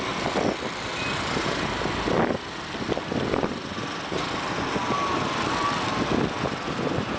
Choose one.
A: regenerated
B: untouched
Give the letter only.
B